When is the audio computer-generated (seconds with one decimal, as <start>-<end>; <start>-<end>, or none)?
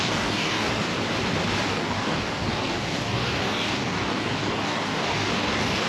0.0-0.9; 1.7-5.9